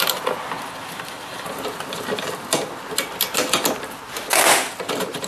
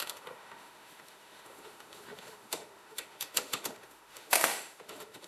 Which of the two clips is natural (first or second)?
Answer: first